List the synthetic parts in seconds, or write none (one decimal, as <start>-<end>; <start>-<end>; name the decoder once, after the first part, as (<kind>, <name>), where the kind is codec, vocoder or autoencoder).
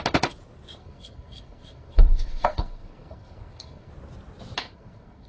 0.8-3.9 (codec, SNAC); 4.6-5.3